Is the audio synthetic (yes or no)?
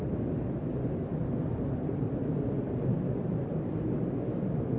no